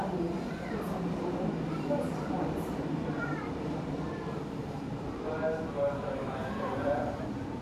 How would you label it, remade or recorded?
remade